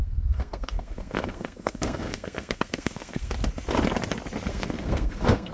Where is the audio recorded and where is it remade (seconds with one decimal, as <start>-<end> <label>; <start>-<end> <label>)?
0.0-3.3 remade; 3.3-4.5 recorded; 4.5-5.5 remade